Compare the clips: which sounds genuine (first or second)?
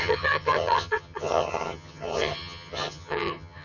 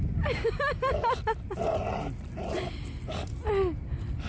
second